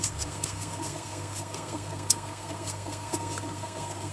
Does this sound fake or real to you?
fake